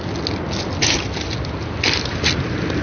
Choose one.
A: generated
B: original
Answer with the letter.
B